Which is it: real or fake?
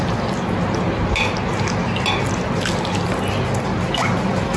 real